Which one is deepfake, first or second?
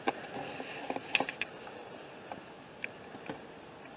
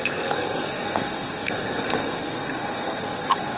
second